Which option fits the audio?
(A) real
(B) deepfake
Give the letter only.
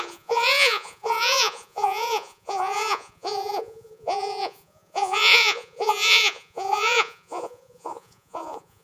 B